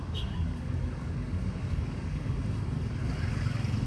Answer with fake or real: fake